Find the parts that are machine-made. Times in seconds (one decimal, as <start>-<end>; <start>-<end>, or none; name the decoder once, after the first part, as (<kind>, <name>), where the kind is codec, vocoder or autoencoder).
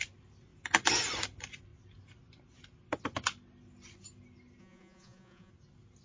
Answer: 4.6-5.5 (vocoder, Vocos)